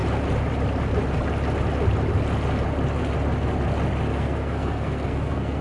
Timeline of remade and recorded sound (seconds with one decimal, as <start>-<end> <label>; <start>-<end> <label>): 0.0-4.1 recorded; 4.1-5.6 remade